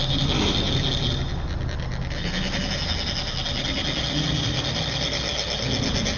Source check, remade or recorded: recorded